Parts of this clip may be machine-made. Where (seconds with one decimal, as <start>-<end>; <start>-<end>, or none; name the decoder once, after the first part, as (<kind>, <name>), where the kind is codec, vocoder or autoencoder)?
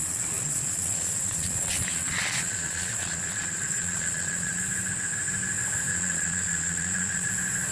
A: 0.0-4.6 (vocoder, Vocos); 5.9-7.3